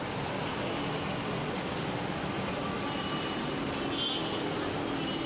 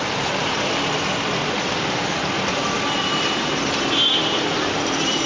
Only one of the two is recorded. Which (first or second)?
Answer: first